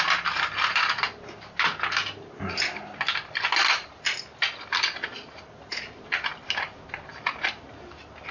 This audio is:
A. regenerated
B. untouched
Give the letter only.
B